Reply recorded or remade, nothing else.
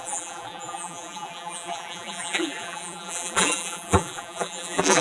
remade